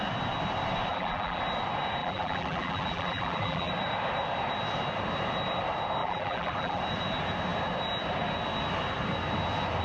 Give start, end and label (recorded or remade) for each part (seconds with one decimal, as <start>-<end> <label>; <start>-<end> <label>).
0.0-0.9 recorded; 0.9-1.4 remade; 1.4-2.0 recorded; 2.0-3.7 remade; 3.7-6.0 recorded; 6.0-6.8 remade; 6.8-9.8 recorded